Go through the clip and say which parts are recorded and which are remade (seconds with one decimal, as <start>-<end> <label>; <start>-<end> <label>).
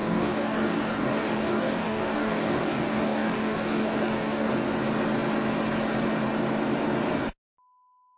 0.0-4.5 remade; 4.5-8.2 recorded